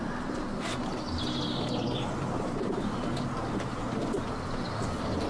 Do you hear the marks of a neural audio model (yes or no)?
no